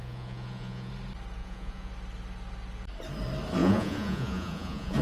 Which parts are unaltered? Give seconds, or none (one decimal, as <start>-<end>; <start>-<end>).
0.9-1.4; 1.9-3.6